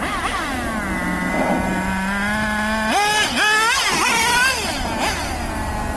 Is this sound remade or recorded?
recorded